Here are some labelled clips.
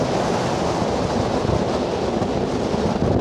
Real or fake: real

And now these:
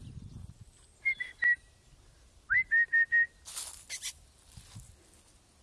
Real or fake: real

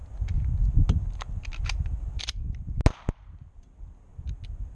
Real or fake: real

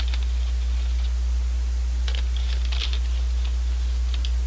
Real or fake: real